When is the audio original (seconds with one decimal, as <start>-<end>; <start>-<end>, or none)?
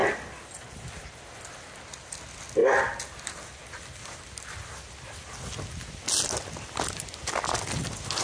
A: 0.0-8.2